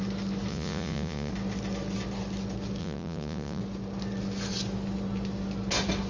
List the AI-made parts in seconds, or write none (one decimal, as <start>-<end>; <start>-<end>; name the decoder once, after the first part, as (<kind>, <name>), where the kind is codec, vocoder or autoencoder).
0.5-1.3 (vocoder, Vocos); 2.8-3.6